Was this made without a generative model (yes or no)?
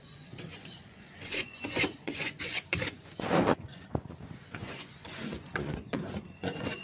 no